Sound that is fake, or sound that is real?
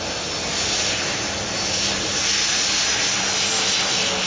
real